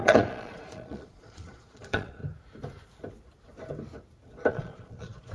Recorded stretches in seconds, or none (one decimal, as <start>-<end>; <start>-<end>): 2.2-4.5